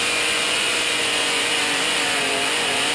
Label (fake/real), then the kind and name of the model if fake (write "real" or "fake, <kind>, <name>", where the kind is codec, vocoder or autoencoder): fake, vocoder, Vocos